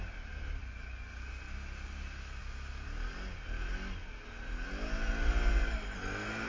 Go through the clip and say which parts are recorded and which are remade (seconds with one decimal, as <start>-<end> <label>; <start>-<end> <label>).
0.0-6.5 recorded